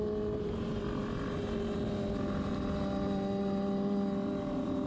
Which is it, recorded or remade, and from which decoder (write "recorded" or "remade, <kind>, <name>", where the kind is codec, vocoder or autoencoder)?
recorded